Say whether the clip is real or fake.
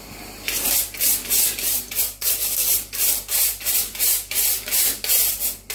real